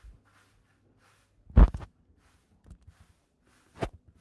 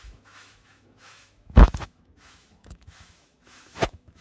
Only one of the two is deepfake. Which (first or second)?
second